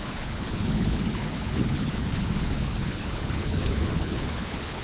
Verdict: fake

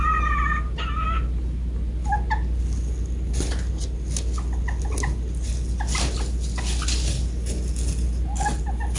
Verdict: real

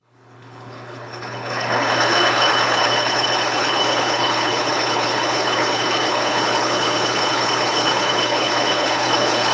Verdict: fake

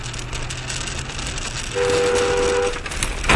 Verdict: real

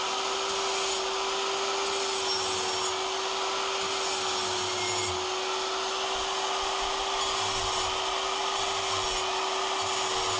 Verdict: real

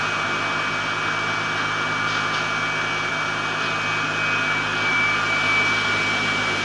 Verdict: real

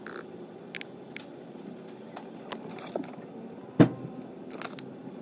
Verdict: real